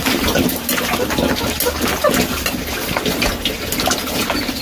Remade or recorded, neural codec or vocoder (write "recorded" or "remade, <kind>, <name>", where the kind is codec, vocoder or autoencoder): recorded